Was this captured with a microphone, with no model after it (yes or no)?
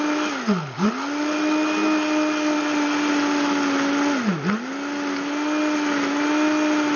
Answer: yes